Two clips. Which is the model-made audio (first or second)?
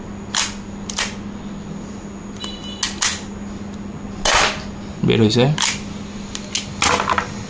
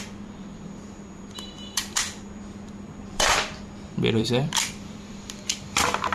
second